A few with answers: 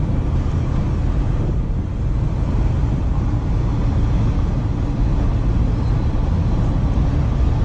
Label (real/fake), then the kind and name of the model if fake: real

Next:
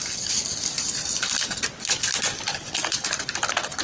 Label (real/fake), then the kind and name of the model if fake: real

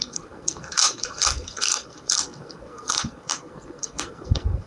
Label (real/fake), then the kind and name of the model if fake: fake, codec, SNAC